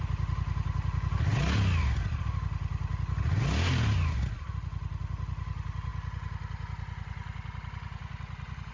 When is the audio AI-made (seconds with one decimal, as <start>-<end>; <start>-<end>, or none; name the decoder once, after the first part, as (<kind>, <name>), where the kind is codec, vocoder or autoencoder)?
none